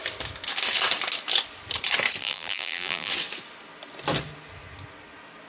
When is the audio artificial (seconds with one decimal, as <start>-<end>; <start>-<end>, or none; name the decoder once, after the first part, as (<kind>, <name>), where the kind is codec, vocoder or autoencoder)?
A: 2.2-3.1 (vocoder, BigVGAN v2)